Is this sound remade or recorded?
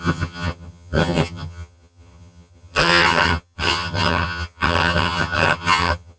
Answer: remade